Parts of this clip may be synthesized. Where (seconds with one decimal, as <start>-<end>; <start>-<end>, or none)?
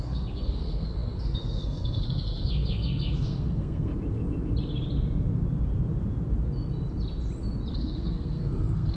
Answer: 0.0-3.9; 7.7-9.0